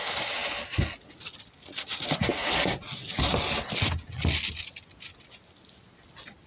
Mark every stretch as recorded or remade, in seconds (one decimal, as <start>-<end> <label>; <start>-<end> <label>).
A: 0.0-6.5 recorded